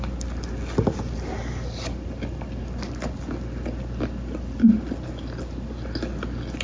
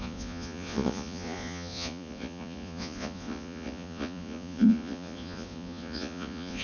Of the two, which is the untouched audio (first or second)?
first